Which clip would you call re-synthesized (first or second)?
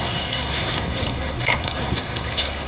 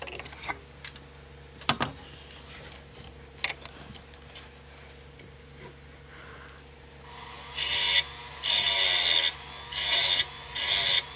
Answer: first